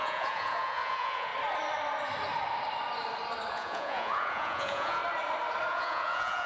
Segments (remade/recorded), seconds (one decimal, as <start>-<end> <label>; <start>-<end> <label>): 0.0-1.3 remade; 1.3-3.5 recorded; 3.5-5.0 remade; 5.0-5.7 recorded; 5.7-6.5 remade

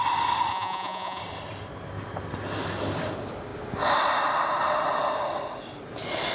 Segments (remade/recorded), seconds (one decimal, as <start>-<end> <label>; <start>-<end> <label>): 0.0-0.5 recorded; 0.5-1.2 remade; 1.2-6.3 recorded

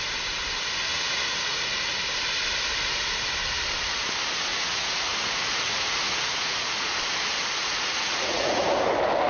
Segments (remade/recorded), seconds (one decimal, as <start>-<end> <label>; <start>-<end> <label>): 0.0-0.9 recorded; 0.9-1.6 remade; 1.6-4.5 recorded; 4.5-7.0 remade; 7.0-7.6 recorded; 7.6-8.7 remade; 8.7-9.3 recorded

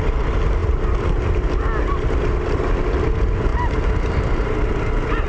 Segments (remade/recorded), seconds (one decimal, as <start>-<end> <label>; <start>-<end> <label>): 0.0-5.3 recorded